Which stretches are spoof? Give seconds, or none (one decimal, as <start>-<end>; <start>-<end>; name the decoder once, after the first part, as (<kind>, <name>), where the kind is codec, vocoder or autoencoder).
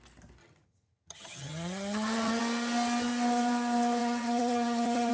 0.4-2.4 (vocoder, HiFi-GAN); 4.0-5.1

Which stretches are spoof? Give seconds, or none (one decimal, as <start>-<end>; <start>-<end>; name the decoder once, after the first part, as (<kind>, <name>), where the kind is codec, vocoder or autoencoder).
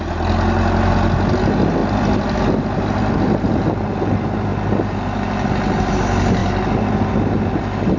1.8-2.4 (vocoder, BigVGAN v2)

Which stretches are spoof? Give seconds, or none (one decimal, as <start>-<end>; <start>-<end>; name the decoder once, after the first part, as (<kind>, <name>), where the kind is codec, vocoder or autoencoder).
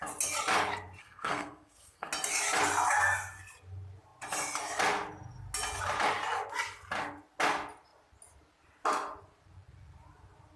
1.0-2.1 (codec, SNAC)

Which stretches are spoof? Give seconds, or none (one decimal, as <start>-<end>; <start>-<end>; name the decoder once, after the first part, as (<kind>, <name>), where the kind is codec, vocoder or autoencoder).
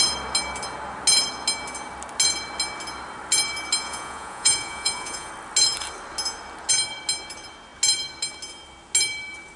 3.8-5.3 (vocoder, Vocos)